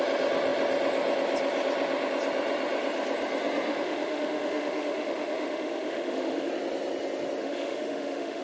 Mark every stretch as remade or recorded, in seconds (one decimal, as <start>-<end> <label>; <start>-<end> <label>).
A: 0.0-3.7 recorded; 3.7-6.5 remade; 6.5-7.4 recorded; 7.4-8.4 remade